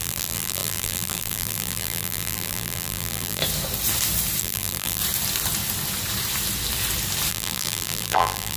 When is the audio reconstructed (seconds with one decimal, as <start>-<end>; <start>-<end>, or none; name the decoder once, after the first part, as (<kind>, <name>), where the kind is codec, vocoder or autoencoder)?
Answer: 0.0-3.4 (vocoder, BigVGAN v2); 4.4-5.0; 7.3-8.6

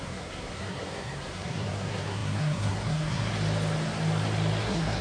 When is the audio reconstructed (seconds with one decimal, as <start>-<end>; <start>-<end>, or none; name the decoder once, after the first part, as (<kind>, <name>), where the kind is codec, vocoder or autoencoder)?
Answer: 0.0-3.3 (codec, SNAC); 4.6-5.0

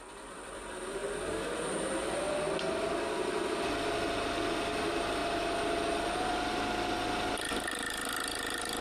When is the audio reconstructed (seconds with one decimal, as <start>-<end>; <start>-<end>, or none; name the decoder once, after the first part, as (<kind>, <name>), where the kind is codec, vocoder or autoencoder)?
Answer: none

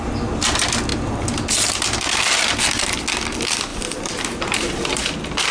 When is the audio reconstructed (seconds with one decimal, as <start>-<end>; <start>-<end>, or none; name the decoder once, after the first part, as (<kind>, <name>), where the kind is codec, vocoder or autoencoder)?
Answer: 3.7-5.0 (vocoder, BigVGAN v2)

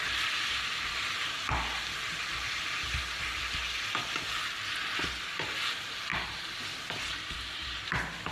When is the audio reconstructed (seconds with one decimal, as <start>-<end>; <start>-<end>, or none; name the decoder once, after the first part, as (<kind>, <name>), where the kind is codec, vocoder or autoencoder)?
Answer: none

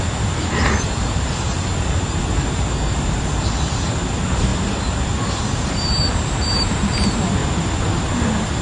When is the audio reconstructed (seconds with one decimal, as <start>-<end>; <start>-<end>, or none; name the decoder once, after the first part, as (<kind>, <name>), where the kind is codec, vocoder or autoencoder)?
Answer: 0.0-4.5 (vocoder, BigVGAN v2); 5.7-7.4; 8.1-8.6